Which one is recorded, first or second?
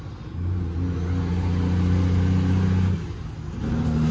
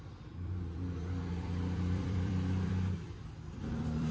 first